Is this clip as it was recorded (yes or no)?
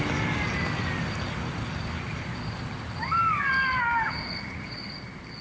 yes